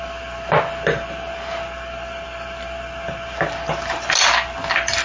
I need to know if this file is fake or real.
real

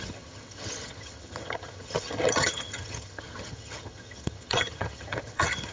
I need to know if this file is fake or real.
fake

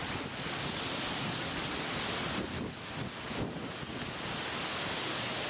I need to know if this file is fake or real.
real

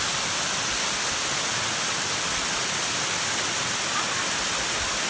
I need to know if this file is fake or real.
real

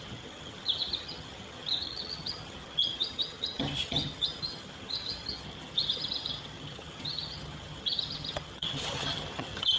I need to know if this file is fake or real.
fake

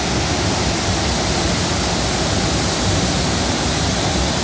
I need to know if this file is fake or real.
real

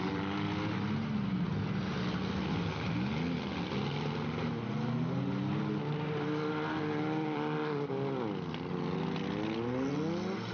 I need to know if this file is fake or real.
real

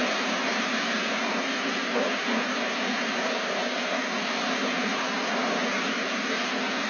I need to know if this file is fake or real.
real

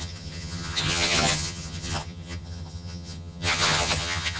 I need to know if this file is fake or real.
fake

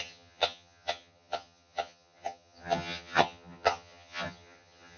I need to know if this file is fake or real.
fake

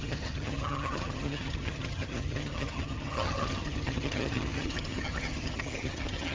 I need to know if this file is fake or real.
fake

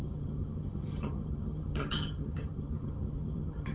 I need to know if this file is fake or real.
fake